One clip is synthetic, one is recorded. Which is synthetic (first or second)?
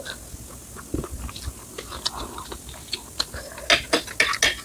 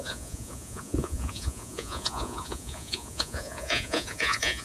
second